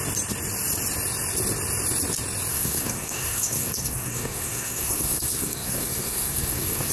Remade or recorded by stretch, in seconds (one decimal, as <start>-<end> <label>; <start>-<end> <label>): 0.0-2.5 recorded; 2.5-6.9 remade